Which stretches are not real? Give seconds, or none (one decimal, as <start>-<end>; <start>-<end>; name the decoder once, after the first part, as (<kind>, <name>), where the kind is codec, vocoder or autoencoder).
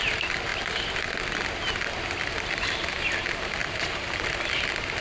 3.6-4.4 (vocoder, BigVGAN v2)